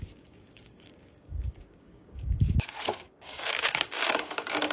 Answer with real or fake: fake